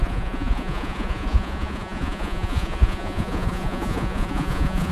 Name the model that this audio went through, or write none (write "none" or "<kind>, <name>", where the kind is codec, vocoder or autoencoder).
vocoder, Vocos